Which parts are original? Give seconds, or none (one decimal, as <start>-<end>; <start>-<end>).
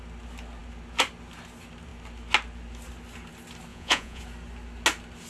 0.0-3.7; 4.2-5.3